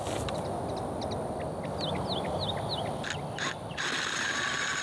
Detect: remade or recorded recorded